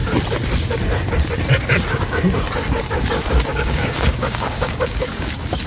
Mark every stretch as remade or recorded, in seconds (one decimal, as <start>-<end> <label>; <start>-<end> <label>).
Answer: 0.0-3.5 recorded; 3.5-5.3 remade; 5.3-5.7 recorded